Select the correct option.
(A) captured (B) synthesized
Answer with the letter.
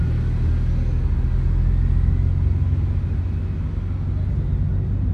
A